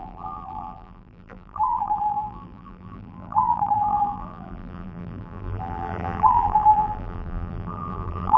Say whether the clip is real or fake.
fake